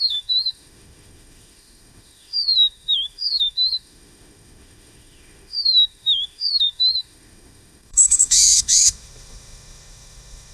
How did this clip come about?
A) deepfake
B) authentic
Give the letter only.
A